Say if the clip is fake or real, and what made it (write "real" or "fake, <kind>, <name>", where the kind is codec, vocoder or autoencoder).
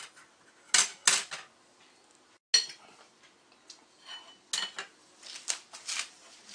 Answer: real